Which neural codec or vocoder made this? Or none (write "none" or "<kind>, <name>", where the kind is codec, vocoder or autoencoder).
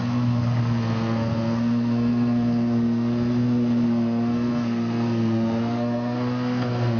codec, SNAC